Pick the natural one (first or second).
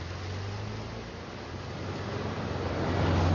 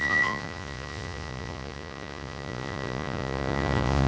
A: first